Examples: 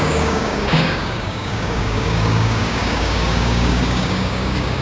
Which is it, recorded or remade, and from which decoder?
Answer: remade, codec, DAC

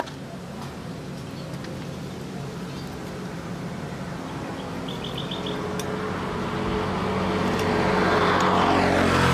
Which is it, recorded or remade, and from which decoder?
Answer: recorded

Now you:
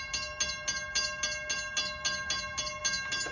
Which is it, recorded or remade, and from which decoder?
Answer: recorded